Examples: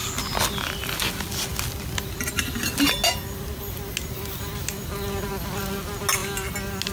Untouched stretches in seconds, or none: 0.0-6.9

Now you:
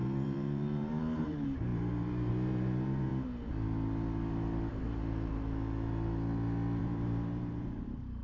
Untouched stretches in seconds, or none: 3.1-6.8